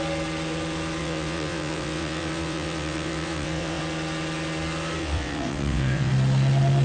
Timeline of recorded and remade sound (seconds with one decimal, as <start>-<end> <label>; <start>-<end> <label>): 0.0-1.0 recorded; 1.0-3.8 remade; 3.8-5.0 recorded; 5.0-6.1 remade; 6.1-6.8 recorded